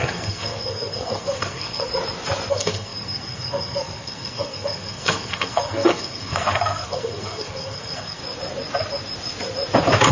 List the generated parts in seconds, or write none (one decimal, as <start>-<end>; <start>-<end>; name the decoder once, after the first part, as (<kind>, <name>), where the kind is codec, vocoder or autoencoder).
0.0-1.9 (codec, SNAC); 2.5-8.2